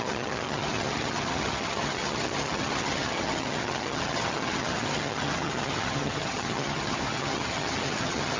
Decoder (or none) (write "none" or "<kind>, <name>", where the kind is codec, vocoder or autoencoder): vocoder, HiFi-GAN